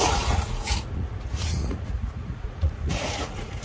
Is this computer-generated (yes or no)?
yes